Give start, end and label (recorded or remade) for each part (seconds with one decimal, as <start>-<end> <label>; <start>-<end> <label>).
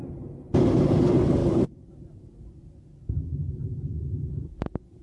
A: 0.0-1.4 recorded; 1.4-4.3 remade; 4.3-5.0 recorded